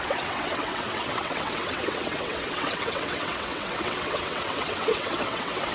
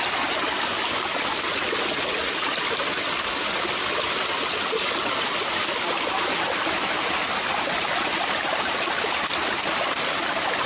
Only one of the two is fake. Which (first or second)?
first